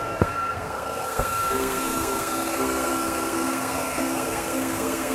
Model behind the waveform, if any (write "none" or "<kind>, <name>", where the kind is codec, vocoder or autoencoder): codec, SNAC